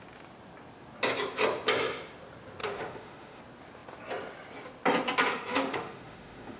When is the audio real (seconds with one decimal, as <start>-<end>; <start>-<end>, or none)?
0.0-2.6; 3.4-5.3